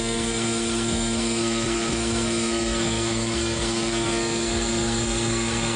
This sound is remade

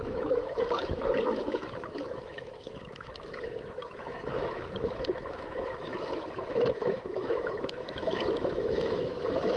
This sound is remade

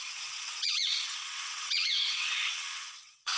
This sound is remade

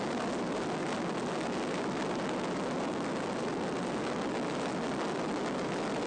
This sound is recorded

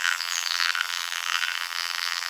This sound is remade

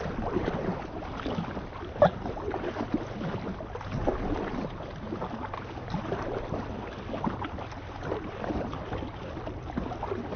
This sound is recorded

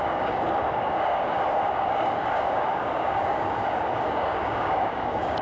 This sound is remade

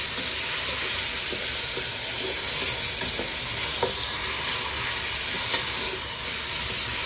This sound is recorded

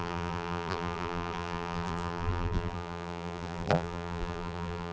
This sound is remade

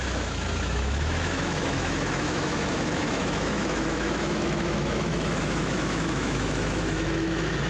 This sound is remade